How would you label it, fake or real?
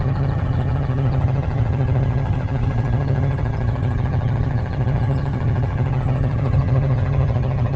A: fake